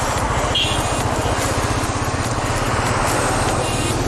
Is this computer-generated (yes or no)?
no